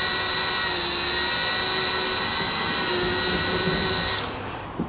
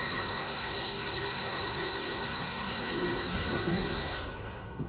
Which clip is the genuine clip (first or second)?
first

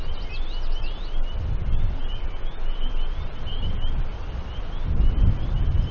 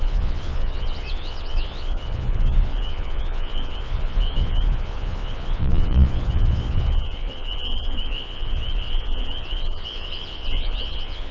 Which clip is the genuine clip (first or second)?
first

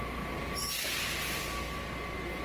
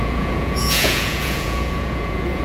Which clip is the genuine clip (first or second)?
first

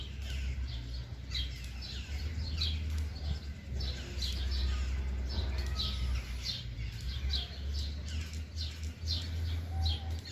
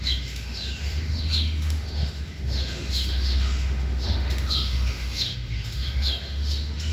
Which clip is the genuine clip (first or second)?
first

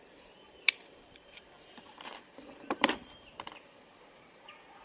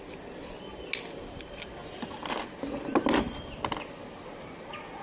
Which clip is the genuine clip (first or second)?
second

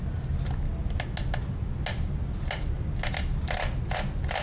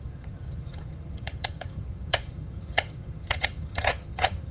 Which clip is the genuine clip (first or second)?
first